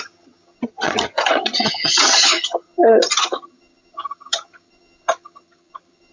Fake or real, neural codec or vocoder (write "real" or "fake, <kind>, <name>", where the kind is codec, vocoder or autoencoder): fake, vocoder, HiFi-GAN